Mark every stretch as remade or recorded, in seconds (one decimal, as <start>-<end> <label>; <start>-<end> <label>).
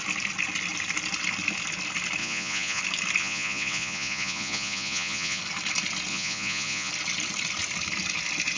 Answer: 0.0-2.2 recorded; 2.2-2.8 remade; 2.8-3.2 recorded; 3.2-5.4 remade; 5.4-6.1 recorded; 6.1-6.9 remade; 6.9-8.6 recorded